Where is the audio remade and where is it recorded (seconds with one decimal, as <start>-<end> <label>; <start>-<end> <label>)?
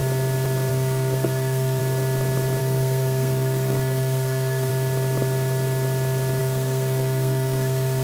0.0-0.7 recorded; 0.7-1.8 remade; 1.8-2.6 recorded; 2.6-4.7 remade; 4.7-6.4 recorded; 6.4-8.0 remade